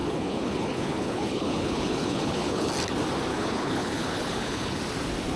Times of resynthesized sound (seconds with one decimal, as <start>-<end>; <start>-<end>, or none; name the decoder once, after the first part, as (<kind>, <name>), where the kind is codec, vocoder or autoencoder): 0.0-2.7 (codec, HILCodec); 3.3-4.8

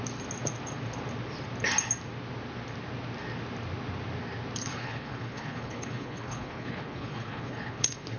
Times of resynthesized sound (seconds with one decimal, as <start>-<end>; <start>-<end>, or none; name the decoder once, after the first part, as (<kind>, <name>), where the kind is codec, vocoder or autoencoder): 4.6-8.2 (codec, HILCodec)

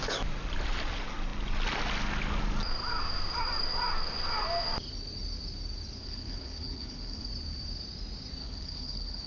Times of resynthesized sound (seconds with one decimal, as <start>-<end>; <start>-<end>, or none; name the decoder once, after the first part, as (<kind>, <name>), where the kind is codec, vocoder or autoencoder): 6.0-7.3 (codec, HILCodec); 8.4-9.3

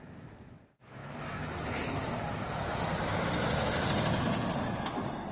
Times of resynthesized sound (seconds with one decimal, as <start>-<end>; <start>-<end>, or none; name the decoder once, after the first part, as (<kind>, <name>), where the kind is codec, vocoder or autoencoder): none

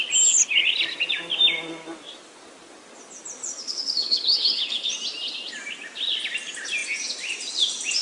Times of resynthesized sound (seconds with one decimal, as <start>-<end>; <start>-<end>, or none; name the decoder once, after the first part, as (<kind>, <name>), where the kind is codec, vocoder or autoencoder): 3.4-4.9 (codec, HILCodec)

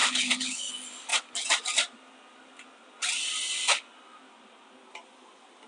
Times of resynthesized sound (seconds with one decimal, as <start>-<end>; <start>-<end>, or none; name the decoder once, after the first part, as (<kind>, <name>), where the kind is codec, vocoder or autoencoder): 0.0-0.7 (codec, HILCodec)

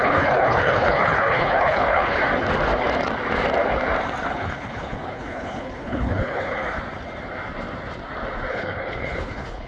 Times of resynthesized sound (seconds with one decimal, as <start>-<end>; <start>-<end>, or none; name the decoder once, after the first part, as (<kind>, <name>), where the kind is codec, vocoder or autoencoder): 0.0-2.2 (codec, HILCodec); 4.3-6.6; 8.5-9.7

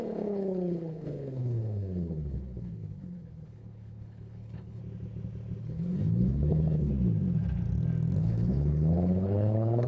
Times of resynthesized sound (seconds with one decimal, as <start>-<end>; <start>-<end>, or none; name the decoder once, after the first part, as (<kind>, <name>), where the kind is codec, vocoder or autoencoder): 0.0-4.8 (codec, HILCodec); 5.6-6.9; 8.2-9.9